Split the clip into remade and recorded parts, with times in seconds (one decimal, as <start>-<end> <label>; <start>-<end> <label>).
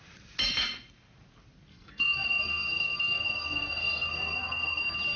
0.0-1.7 recorded; 1.7-4.8 remade; 4.8-5.2 recorded